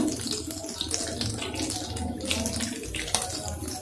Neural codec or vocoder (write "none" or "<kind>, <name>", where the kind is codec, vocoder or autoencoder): none